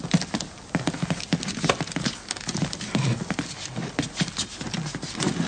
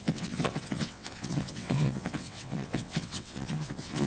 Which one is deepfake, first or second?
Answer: second